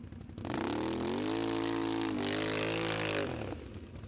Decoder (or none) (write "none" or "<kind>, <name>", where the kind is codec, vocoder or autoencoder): none